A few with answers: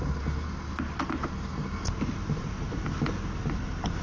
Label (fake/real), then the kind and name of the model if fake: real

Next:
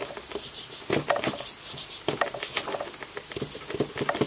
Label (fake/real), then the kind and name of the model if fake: real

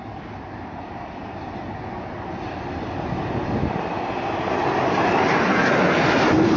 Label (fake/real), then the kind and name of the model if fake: real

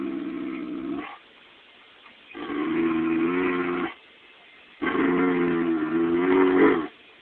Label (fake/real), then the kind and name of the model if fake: real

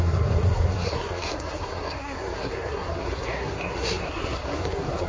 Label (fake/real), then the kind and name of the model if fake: fake, codec, SNAC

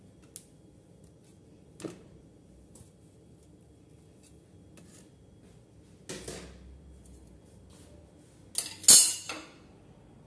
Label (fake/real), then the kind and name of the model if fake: real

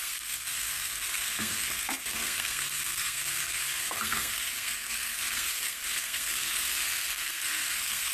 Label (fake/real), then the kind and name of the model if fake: fake, codec, SNAC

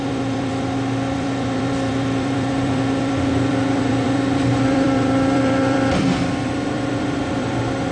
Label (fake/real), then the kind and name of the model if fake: fake, vocoder, BigVGAN v2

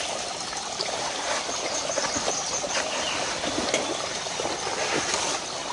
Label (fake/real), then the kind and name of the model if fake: real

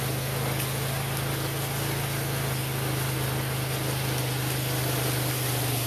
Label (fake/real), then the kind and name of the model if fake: real